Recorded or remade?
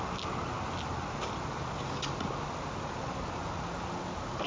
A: recorded